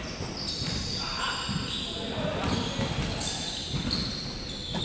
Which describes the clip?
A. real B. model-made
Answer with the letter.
A